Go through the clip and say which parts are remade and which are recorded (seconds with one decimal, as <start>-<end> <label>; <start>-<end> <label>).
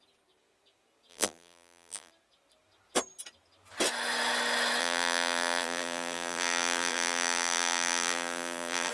0.0-1.1 recorded; 1.1-2.1 remade; 2.1-4.8 recorded; 4.8-8.9 remade